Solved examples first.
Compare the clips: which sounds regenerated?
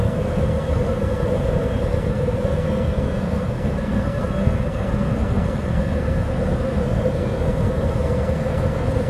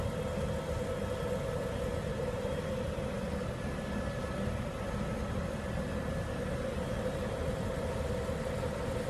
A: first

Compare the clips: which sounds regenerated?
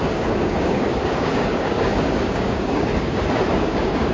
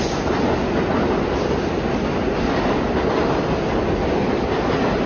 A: first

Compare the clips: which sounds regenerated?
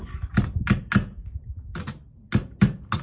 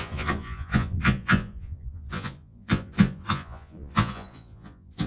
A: second